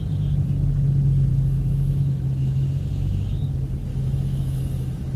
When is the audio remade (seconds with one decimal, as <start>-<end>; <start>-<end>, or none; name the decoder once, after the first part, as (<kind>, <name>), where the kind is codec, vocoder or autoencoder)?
1.3-3.4 (autoencoder, DAC-VAE); 3.9-5.2